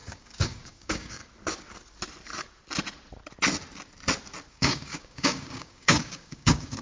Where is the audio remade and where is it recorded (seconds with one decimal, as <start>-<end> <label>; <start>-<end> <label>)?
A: 0.0-1.2 remade; 1.2-4.5 recorded; 4.5-6.8 remade